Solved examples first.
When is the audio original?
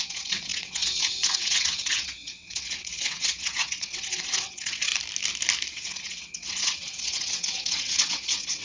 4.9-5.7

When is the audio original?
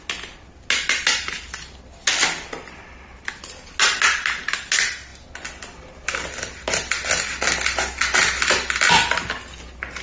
0.0-10.0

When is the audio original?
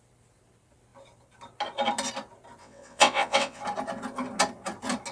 0.0-2.6; 3.6-5.1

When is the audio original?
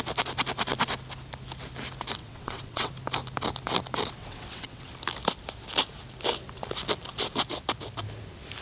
0.0-2.2; 2.9-4.2; 4.9-8.6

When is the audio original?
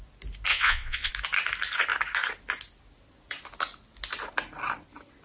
0.0-0.5; 1.1-5.2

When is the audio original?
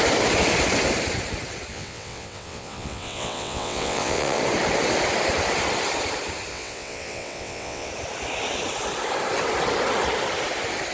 0.0-1.7; 4.4-6.5; 7.9-10.9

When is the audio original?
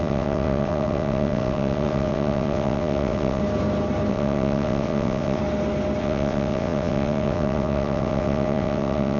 3.4-4.1; 5.4-6.0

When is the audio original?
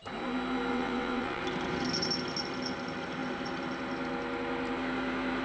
0.0-0.7; 1.4-5.4